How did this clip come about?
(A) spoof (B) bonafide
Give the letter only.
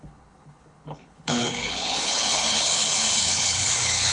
A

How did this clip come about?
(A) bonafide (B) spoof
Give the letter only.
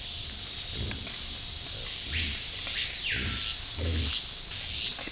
A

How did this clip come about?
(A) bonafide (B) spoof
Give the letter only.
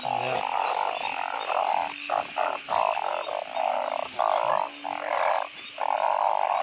A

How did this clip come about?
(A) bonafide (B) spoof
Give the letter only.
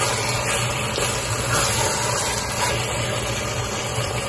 A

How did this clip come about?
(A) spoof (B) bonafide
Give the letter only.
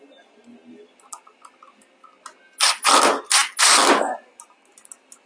B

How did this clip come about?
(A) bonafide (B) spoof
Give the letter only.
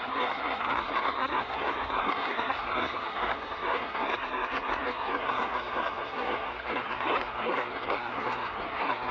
B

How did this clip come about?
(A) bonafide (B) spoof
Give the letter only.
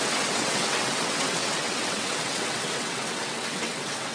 B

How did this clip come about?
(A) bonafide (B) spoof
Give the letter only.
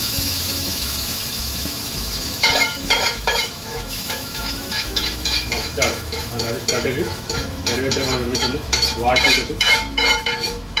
B